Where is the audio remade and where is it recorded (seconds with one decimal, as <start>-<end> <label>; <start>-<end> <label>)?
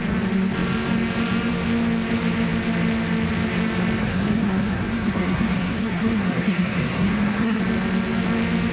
0.0-4.0 recorded; 4.0-7.6 remade; 7.6-8.7 recorded